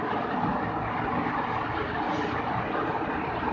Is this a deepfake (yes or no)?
no